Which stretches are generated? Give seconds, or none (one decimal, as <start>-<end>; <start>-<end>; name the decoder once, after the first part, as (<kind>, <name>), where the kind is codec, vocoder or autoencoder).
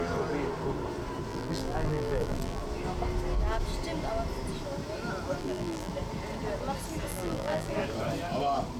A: 1.3-2.6 (vocoder, BigVGAN v2); 5.4-5.9; 7.1-7.7